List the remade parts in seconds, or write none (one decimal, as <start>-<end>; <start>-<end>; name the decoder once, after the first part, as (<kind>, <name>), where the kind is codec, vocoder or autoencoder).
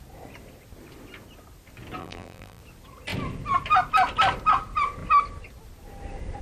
2.0-2.6 (vocoder, BigVGAN v2)